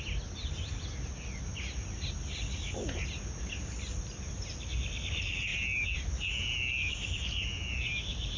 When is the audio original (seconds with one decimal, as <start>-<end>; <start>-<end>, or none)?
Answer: 0.0-8.4